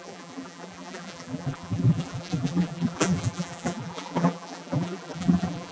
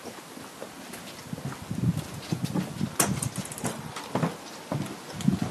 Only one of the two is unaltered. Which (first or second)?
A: second